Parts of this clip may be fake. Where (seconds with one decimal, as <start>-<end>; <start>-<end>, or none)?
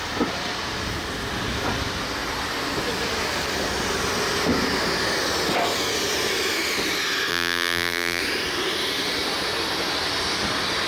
7.3-8.2